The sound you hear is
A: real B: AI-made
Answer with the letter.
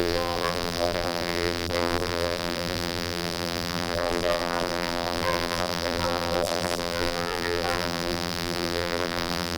B